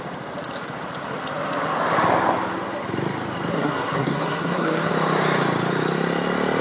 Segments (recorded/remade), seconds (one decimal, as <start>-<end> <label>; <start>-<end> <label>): 0.0-3.5 recorded; 3.5-4.9 remade; 4.9-6.6 recorded